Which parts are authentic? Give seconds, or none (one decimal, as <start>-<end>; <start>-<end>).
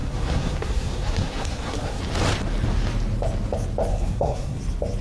2.0-3.9; 4.6-5.0